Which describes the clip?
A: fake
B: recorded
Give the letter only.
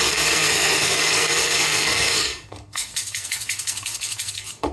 A